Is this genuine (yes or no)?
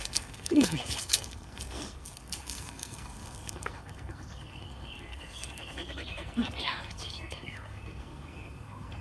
no